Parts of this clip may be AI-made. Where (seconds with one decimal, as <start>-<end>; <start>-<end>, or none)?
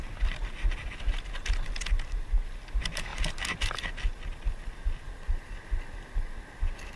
none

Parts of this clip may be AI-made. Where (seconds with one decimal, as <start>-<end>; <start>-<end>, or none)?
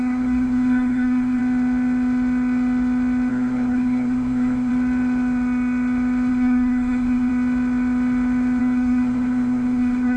0.0-1.4; 3.3-4.7; 6.3-7.3; 8.6-10.2